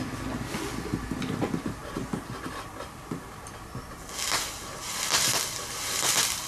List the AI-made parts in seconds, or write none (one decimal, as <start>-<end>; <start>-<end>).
0.0-1.8; 4.5-6.5